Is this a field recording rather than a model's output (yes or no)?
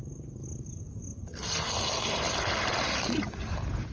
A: yes